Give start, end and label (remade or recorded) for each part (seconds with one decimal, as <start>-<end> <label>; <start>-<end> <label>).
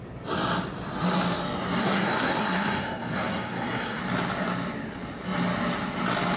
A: 0.0-1.8 recorded; 1.8-4.0 remade; 4.0-6.4 recorded